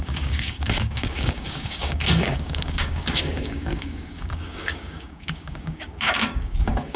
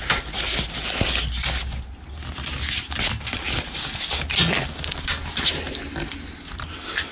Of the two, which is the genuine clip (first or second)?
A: second